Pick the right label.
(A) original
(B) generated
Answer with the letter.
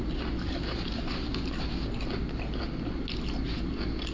A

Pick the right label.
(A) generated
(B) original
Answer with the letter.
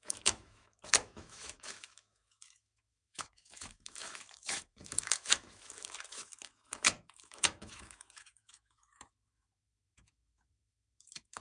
A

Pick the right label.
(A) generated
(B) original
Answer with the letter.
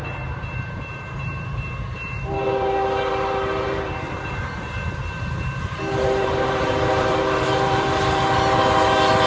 A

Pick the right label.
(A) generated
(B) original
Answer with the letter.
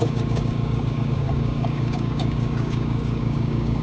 A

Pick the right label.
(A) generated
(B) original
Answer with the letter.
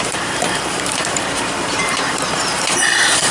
A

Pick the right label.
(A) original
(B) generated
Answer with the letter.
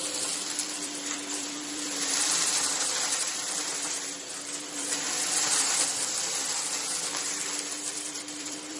B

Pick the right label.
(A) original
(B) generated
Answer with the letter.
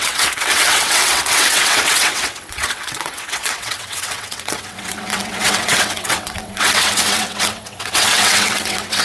B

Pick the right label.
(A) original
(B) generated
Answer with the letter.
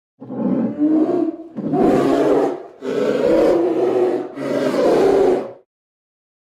A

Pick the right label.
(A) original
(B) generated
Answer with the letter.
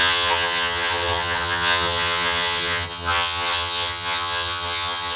B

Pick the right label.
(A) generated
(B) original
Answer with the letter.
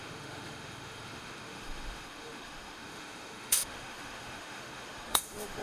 A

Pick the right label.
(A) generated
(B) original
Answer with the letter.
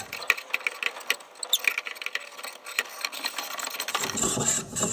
B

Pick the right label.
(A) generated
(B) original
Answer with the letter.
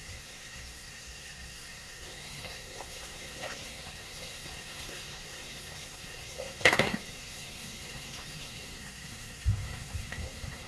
A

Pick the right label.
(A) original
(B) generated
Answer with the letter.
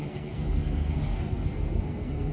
B